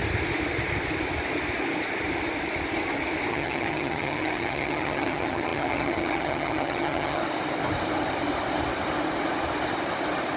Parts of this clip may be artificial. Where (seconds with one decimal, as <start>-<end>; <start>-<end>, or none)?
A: 3.3-7.2